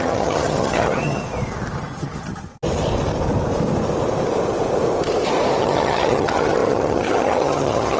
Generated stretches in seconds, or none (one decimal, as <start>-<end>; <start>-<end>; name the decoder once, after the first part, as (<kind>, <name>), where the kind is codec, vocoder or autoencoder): 0.0-1.2 (vocoder, HiFi-GAN); 1.8-2.5; 5.6-8.0